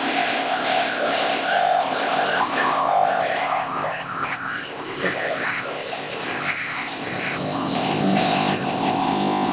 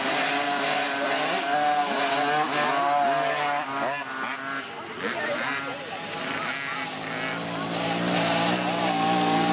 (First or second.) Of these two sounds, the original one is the second